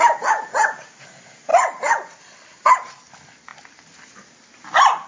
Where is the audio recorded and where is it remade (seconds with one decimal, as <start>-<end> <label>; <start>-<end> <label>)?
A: 0.0-1.5 recorded; 1.5-2.2 remade; 2.2-5.1 recorded